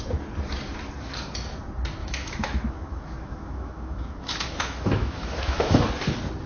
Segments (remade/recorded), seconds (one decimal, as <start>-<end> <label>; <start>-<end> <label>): 0.0-2.0 recorded; 2.0-5.9 remade; 5.9-6.5 recorded